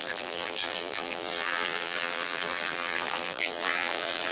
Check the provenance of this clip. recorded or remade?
remade